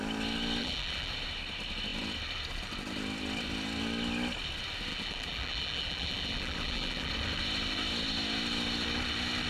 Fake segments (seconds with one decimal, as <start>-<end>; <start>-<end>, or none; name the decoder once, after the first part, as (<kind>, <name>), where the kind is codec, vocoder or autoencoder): 0.6-1.1 (vocoder, BigVGAN v2); 4.9-7.1